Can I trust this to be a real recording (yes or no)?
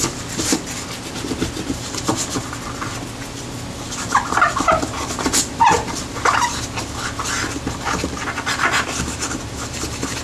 yes